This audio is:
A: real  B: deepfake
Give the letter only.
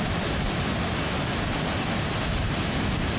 A